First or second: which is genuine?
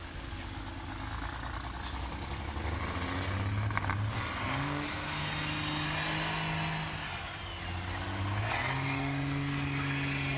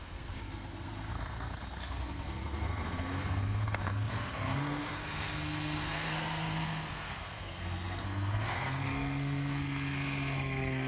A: first